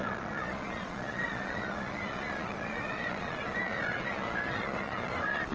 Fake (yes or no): yes